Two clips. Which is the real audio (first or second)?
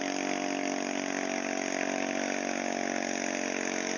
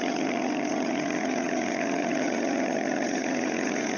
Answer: first